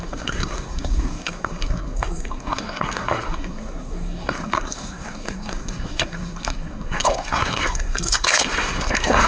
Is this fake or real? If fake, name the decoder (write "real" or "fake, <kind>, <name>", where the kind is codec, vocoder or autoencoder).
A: fake, codec, SNAC